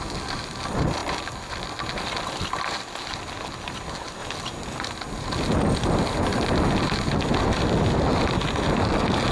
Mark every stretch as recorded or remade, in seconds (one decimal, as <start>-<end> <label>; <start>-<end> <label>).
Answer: 0.0-9.3 recorded